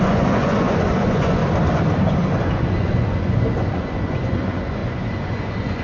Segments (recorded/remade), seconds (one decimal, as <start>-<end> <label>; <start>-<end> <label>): 0.0-1.4 remade; 1.4-2.4 recorded; 2.4-5.8 remade